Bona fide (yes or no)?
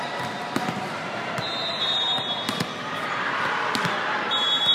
yes